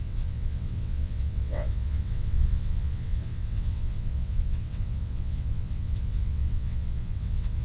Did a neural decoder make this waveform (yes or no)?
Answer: yes